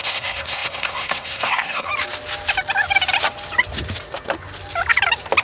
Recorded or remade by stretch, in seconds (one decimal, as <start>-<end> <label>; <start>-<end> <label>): 0.0-1.9 remade; 1.9-5.4 recorded